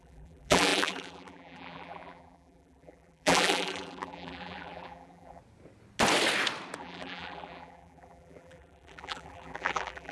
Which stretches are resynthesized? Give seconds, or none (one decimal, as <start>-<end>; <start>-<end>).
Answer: 0.0-5.4; 6.8-10.1